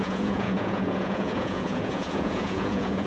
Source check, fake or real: fake